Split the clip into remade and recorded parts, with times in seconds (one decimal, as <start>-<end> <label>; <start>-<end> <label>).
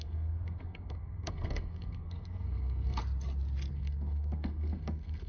0.0-3.0 remade; 3.0-3.7 recorded; 3.7-5.3 remade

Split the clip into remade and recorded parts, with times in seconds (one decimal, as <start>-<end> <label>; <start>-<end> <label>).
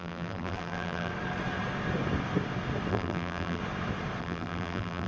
0.0-1.1 remade; 1.1-2.9 recorded; 2.9-3.6 remade; 3.6-4.2 recorded; 4.2-5.1 remade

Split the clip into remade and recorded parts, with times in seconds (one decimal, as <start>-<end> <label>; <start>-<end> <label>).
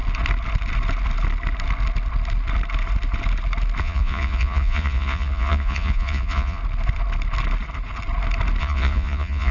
0.0-3.8 recorded; 3.8-6.6 remade; 6.6-8.6 recorded; 8.6-9.5 remade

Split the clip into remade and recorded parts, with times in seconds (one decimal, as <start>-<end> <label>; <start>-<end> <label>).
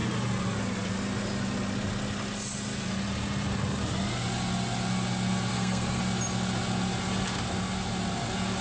0.0-5.5 recorded; 5.5-6.0 remade; 6.0-8.6 recorded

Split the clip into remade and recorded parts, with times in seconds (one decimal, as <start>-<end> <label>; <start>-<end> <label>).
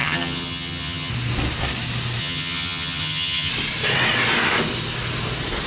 0.0-1.1 remade; 1.1-2.2 recorded; 2.2-3.5 remade; 3.5-5.7 recorded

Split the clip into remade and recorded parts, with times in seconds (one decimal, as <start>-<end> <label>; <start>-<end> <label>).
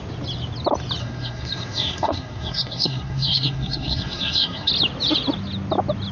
0.0-1.0 recorded; 1.0-4.7 remade; 4.7-6.1 recorded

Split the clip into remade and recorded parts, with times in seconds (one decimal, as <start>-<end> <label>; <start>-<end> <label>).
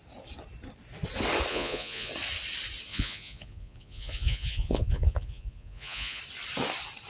0.0-1.5 recorded; 1.5-2.1 remade; 2.1-2.9 recorded; 2.9-6.2 remade; 6.2-7.1 recorded